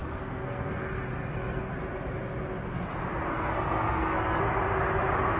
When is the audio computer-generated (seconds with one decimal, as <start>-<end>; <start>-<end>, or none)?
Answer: 0.0-1.7; 3.3-4.4